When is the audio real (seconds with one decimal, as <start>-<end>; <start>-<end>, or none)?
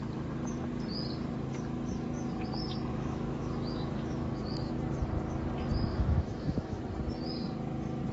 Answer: 0.0-2.9; 4.7-5.9; 6.8-8.1